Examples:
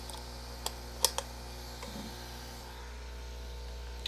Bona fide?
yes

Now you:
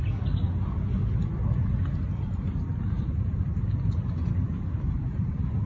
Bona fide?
yes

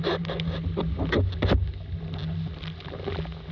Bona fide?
yes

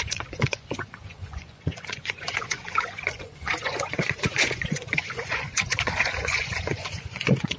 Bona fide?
no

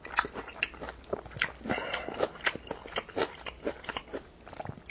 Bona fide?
yes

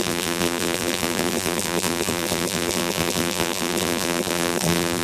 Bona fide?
no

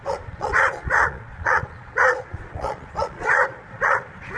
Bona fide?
no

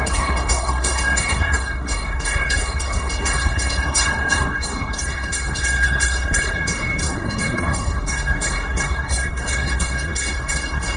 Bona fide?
no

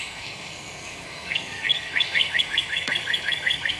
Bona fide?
no